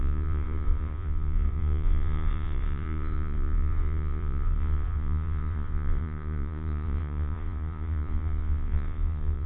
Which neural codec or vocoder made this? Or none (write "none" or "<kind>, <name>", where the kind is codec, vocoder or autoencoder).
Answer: vocoder, Vocos